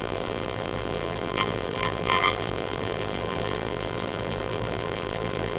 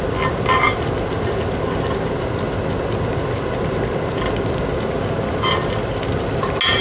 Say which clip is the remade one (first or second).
first